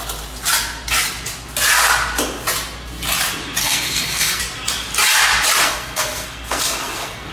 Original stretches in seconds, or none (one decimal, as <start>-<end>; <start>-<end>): 0.0-3.6; 4.4-5.6